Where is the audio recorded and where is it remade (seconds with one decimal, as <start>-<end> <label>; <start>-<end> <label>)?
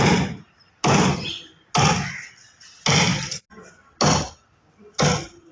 0.0-5.5 recorded